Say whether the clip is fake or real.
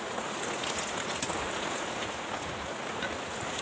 fake